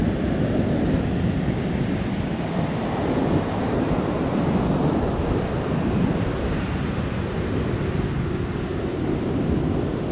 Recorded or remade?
recorded